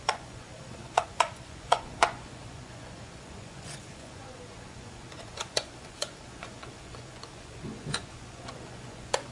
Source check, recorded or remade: remade